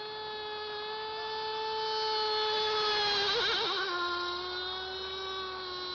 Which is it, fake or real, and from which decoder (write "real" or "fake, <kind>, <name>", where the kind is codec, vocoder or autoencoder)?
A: real